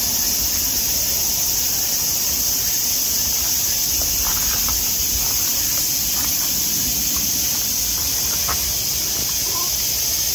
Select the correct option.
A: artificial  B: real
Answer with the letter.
B